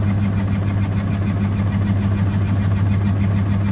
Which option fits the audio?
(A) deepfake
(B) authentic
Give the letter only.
B